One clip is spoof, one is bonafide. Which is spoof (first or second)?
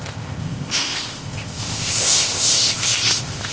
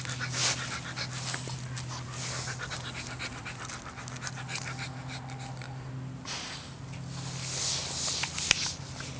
first